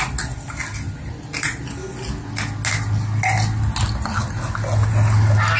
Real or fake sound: real